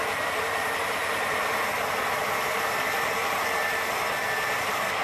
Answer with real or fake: real